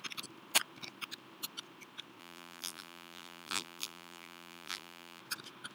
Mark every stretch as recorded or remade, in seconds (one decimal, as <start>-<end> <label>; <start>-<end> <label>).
0.0-2.2 recorded; 2.2-5.2 remade; 5.2-5.7 recorded